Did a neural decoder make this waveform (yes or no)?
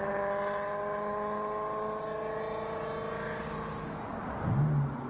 no